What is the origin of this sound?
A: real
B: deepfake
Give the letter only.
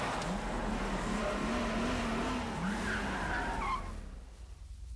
A